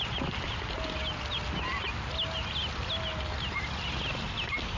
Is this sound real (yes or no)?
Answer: yes